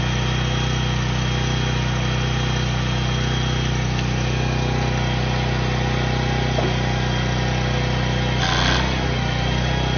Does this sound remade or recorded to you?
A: recorded